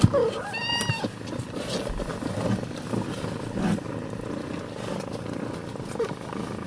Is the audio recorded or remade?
recorded